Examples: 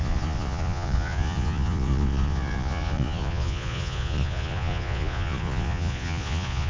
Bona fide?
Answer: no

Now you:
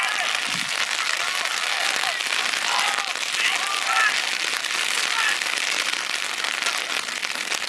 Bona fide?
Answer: yes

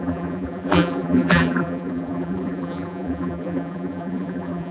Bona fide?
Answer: no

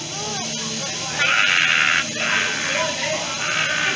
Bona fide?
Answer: yes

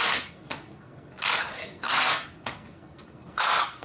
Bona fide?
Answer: no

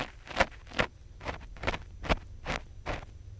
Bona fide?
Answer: yes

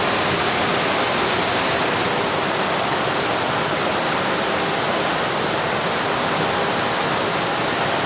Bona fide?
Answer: yes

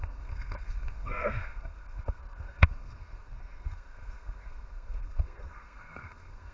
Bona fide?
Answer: no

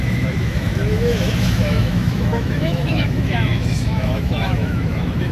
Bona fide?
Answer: no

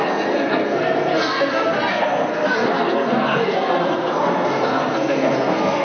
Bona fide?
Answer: no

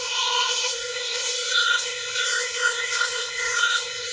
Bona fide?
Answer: no